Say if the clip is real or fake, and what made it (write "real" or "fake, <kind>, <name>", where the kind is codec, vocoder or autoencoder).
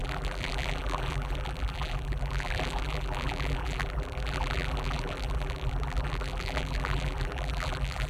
fake, vocoder, BigVGAN v2